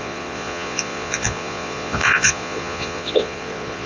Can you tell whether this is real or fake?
fake